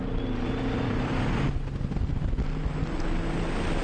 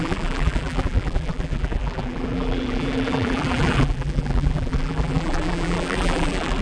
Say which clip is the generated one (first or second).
second